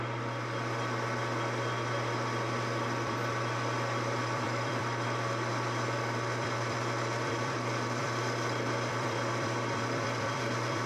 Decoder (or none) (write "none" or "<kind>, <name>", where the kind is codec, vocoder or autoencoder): vocoder, BigVGAN v2